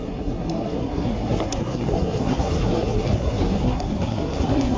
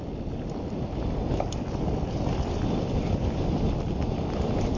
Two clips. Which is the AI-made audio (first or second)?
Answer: first